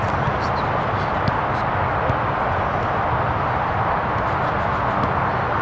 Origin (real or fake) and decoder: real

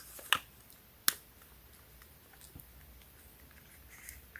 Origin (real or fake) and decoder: real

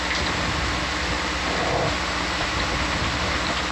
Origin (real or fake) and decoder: real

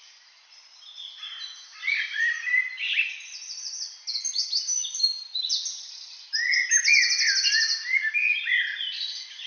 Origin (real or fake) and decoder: real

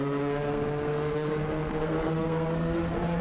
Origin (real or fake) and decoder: fake, codec, SNAC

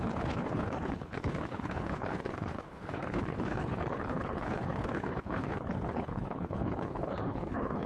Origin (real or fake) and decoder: fake, codec, HILCodec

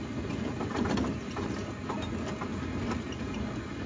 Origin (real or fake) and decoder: real